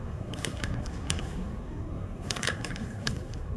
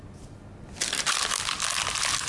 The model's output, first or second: first